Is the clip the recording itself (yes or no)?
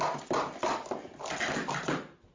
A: yes